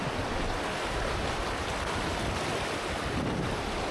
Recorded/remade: recorded